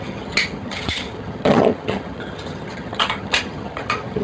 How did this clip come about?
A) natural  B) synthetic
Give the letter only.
B